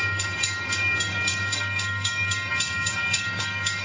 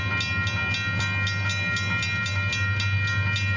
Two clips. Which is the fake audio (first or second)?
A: first